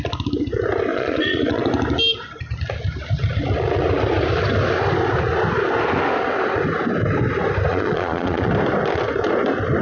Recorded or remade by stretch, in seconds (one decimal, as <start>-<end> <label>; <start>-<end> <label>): 0.0-0.9 recorded; 0.9-1.6 remade; 1.6-7.7 recorded; 7.7-8.5 remade; 8.5-9.8 recorded